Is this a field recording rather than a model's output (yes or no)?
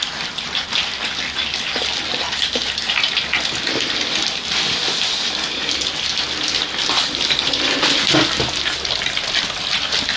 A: yes